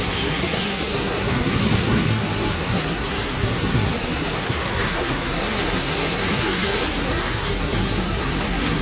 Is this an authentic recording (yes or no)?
no